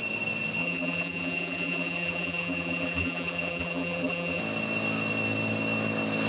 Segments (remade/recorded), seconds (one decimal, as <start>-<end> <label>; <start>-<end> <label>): 0.0-0.6 recorded; 0.6-4.4 remade; 4.4-6.3 recorded